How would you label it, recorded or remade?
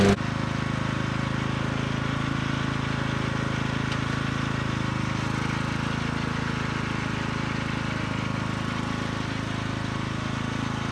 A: recorded